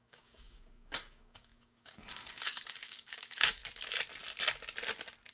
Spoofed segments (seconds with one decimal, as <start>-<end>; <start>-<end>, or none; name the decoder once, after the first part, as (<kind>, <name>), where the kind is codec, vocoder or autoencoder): 0.0-3.6 (codec, DAC)